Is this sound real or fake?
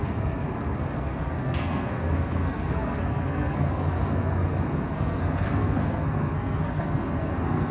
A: fake